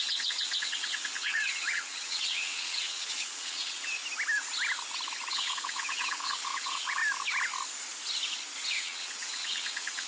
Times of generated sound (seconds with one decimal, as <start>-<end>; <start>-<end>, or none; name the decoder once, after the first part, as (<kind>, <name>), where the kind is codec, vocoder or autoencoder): 0.0-4.0 (vocoder, WaveNeXt); 5.3-7.0; 8.7-10.1